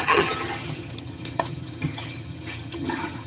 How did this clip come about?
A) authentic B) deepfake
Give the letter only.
B